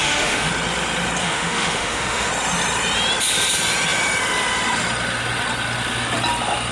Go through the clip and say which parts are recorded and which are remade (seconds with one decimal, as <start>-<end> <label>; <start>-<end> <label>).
0.0-0.5 remade; 0.5-1.2 recorded; 1.2-2.3 remade; 2.3-6.7 recorded